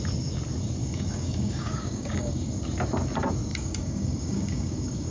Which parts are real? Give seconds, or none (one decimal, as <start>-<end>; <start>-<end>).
0.0-0.8; 2.5-3.5